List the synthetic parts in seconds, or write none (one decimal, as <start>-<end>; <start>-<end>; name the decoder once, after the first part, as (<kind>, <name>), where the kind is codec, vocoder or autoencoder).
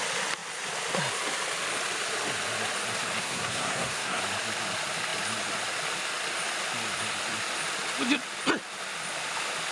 3.2-4.2 (codec, SNAC)